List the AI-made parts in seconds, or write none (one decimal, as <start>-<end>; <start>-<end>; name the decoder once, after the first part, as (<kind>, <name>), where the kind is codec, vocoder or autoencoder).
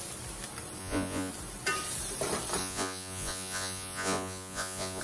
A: 0.8-1.3 (vocoder, Vocos); 2.6-5.0